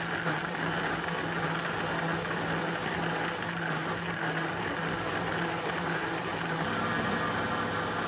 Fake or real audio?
real